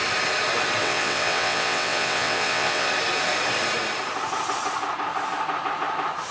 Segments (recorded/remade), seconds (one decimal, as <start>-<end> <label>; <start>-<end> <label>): 0.0-0.8 recorded; 0.8-2.9 remade; 2.9-6.3 recorded